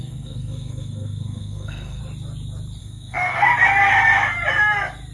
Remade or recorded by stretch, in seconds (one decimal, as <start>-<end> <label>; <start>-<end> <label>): 0.0-2.0 remade; 2.0-2.8 recorded; 2.8-3.5 remade; 3.5-5.1 recorded